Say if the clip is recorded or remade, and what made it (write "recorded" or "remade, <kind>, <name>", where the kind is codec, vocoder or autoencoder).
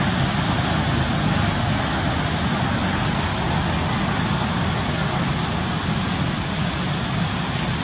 recorded